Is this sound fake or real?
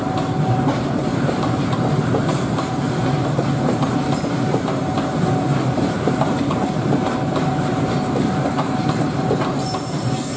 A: fake